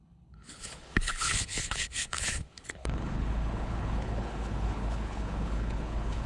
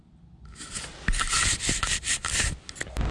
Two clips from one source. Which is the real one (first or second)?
second